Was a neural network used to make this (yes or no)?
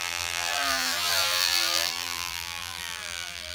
yes